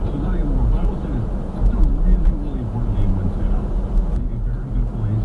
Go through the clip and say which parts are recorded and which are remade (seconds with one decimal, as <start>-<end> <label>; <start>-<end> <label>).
0.0-5.2 recorded